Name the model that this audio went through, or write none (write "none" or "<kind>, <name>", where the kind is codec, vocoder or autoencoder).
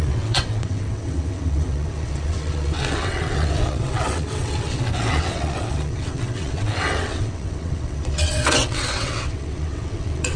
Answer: vocoder, WaveNeXt